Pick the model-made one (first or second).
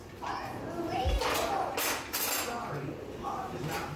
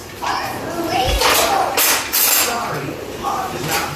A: second